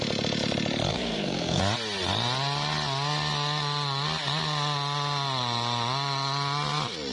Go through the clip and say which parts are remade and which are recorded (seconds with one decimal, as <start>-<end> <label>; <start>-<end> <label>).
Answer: 0.0-0.9 recorded; 0.9-1.6 remade; 1.6-7.1 recorded